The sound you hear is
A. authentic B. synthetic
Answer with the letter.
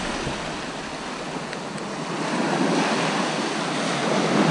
A